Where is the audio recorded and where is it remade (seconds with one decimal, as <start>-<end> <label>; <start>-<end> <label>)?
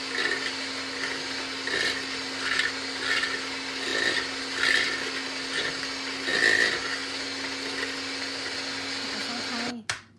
0.0-10.2 recorded